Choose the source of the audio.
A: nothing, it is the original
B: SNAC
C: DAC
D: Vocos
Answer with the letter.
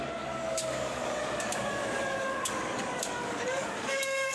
C